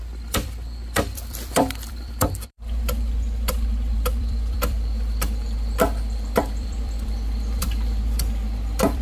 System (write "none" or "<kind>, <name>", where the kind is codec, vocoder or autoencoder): vocoder, BigVGAN v2